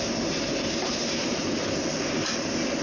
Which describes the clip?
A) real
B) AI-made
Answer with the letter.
A